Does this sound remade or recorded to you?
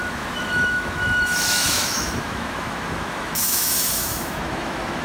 remade